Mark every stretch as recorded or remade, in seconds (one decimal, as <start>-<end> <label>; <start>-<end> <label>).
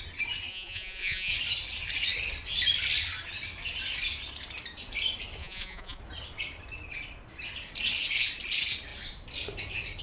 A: 0.0-0.5 recorded; 0.5-1.3 remade; 1.3-5.4 recorded; 5.4-6.0 remade; 6.0-10.0 recorded